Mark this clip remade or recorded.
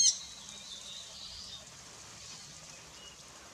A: recorded